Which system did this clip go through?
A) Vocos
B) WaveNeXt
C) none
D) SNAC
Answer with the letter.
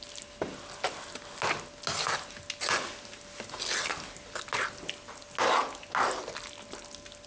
C